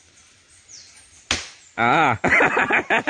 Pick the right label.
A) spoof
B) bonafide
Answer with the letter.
B